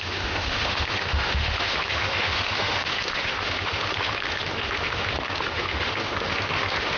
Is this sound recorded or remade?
remade